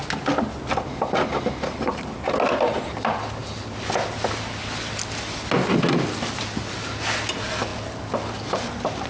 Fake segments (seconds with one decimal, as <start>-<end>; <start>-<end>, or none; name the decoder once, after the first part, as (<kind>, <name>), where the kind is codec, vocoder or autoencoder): none